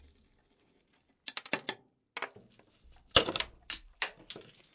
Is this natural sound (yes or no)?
yes